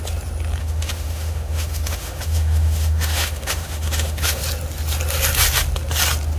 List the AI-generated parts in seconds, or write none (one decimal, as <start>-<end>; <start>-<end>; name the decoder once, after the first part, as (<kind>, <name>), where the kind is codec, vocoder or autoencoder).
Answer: 0.6-4.4 (autoencoder, DAC-VAE)